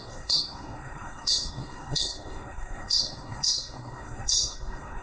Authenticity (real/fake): fake